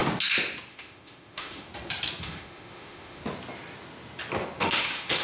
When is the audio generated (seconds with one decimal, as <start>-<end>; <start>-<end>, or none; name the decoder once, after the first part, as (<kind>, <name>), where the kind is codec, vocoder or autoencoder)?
0.7-1.7 (autoencoder, DAC-VAE); 2.2-3.2; 4.6-5.2